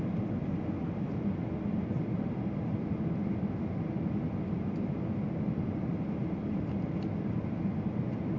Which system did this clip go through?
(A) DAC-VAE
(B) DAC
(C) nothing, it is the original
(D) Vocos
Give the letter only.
C